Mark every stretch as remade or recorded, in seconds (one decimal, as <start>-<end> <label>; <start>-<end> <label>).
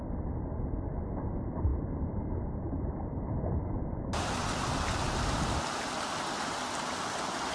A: 0.0-7.5 recorded